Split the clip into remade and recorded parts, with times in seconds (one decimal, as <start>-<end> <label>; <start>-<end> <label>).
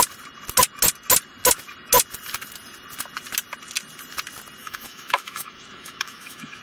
0.0-4.6 recorded; 4.6-6.6 remade